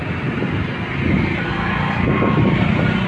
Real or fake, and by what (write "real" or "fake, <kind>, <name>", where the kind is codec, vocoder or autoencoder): real